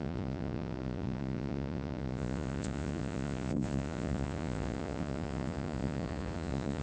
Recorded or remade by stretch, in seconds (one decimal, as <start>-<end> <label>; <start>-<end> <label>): 0.0-6.8 remade